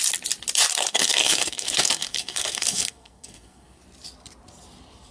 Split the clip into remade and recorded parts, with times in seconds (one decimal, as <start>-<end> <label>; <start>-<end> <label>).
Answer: 0.0-0.7 recorded; 0.7-3.8 remade; 3.8-5.1 recorded